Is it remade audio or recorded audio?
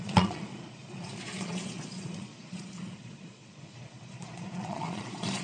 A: remade